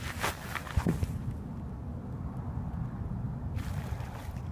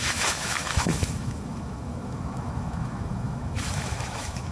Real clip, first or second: first